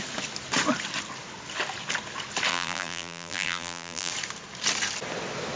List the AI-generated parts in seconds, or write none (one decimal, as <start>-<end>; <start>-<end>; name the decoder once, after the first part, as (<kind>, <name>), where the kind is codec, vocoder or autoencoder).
2.5-4.1 (vocoder, BigVGAN v2)

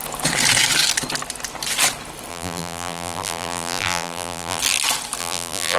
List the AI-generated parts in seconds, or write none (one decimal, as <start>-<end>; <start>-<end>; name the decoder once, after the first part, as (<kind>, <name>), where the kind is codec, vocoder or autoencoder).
2.3-4.6 (vocoder, BigVGAN v2); 5.2-5.8

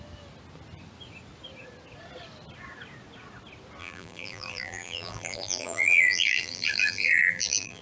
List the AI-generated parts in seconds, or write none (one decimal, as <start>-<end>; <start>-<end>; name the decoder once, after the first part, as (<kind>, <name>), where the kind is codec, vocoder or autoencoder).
3.8-7.8 (vocoder, BigVGAN v2)

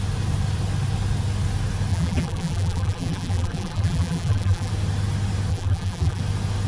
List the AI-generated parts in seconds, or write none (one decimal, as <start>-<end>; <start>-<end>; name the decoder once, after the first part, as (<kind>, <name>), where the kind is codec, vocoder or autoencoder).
1.9-4.7 (vocoder, BigVGAN v2); 5.5-6.2

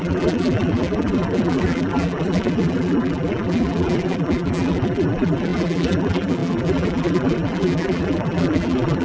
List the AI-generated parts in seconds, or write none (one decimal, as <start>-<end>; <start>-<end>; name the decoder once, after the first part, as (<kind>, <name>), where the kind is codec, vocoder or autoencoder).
0.0-9.0 (vocoder, BigVGAN v2)

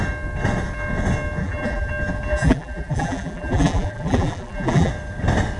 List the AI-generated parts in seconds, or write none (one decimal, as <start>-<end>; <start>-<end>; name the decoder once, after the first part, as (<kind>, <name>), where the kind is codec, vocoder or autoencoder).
1.4-1.9 (vocoder, BigVGAN v2); 2.3-4.9

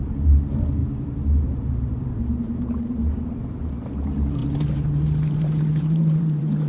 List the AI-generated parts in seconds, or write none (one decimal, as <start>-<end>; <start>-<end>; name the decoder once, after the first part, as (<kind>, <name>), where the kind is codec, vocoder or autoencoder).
0.0-6.7 (vocoder, BigVGAN v2)